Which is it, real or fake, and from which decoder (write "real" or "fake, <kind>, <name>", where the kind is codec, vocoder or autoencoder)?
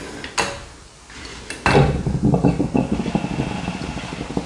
real